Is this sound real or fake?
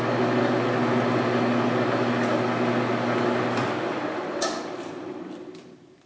real